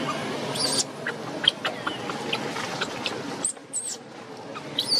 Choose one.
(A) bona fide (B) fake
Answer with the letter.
A